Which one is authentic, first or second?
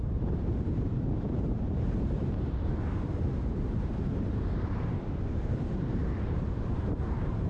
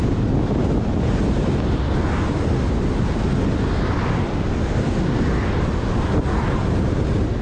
second